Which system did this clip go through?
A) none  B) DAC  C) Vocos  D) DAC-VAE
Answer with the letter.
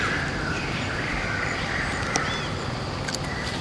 A